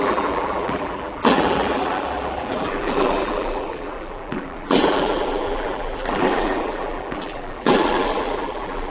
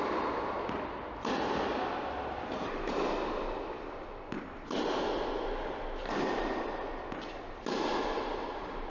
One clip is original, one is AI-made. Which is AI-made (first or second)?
first